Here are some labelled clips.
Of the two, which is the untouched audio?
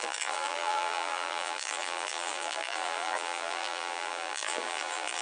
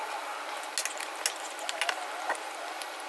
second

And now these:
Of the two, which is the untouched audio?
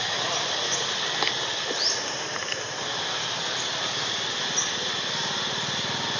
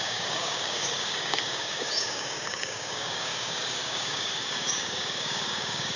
first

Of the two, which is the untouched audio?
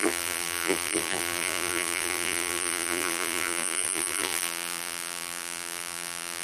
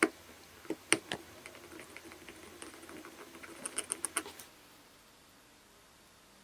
second